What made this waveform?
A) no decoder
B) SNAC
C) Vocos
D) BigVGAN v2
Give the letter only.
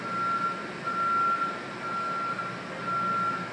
A